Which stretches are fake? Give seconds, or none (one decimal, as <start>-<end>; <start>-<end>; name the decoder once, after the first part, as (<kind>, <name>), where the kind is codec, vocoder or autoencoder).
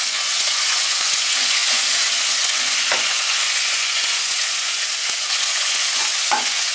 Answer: 0.0-6.7 (vocoder, Vocos)